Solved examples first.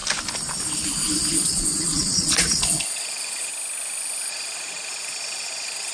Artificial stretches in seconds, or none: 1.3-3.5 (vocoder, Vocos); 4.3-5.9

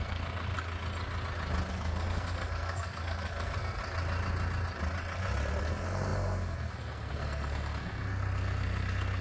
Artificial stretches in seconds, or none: 0.0-0.5 (codec, SNAC); 1.7-3.8; 5.6-9.2

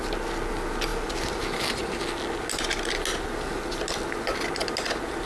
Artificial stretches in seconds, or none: none

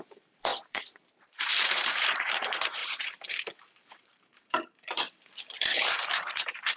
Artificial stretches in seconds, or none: 0.0-6.8 (vocoder, BigVGAN v2)

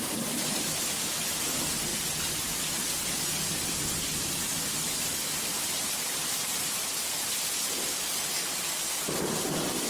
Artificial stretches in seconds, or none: 1.9-2.6 (vocoder, BigVGAN v2); 4.5-7.6